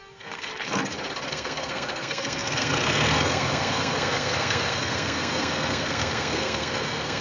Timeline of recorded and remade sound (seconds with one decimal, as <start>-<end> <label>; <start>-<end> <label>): 0.0-0.5 remade; 0.5-1.3 recorded; 1.3-7.2 remade